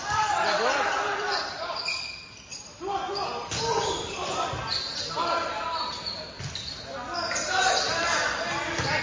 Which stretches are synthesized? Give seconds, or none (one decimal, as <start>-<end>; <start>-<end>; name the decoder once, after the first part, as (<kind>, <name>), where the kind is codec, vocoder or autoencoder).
0.0-5.2 (vocoder, BigVGAN v2); 7.6-9.0